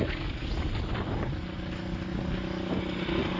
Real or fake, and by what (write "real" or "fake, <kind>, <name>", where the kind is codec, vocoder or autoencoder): real